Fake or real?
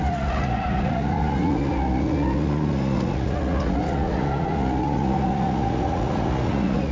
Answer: fake